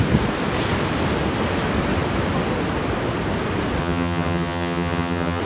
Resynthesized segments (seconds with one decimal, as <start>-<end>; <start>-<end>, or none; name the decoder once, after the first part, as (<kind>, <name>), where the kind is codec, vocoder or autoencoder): 3.8-5.4 (vocoder, HiFi-GAN)